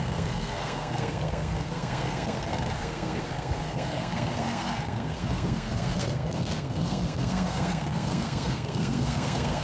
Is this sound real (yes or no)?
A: no